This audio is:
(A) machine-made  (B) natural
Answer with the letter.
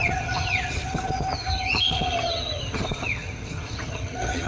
A